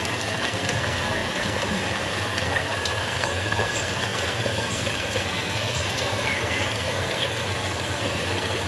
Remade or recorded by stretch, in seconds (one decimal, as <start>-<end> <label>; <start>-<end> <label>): 0.0-8.7 remade